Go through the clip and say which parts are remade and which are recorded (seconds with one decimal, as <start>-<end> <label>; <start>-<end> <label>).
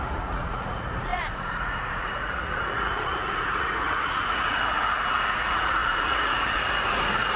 0.0-7.4 remade